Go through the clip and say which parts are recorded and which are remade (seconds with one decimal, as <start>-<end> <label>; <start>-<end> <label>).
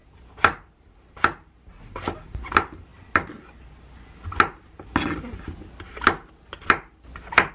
0.0-7.5 recorded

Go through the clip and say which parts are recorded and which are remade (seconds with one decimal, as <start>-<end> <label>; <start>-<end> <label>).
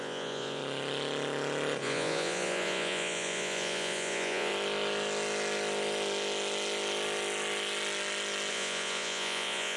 0.0-0.6 remade; 0.6-1.8 recorded; 1.8-4.5 remade; 4.5-8.5 recorded; 8.5-9.8 remade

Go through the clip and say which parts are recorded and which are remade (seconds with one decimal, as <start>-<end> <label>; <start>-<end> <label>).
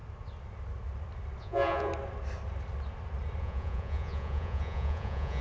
0.0-1.4 recorded; 1.4-1.9 remade; 1.9-3.4 recorded; 3.4-5.4 remade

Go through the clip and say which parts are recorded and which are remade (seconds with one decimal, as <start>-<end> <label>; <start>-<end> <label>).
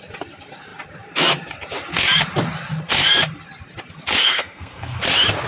0.0-4.2 recorded; 4.2-5.0 remade; 5.0-5.5 recorded